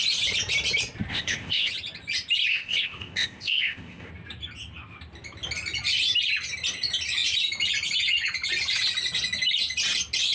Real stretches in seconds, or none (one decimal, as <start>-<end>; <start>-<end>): 0.0-1.1; 1.7-2.5; 4.1-10.3